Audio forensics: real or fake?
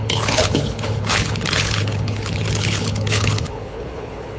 fake